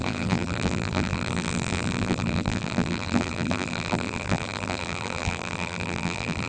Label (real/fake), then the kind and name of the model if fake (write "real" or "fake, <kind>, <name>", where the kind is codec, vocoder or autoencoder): fake, vocoder, BigVGAN v2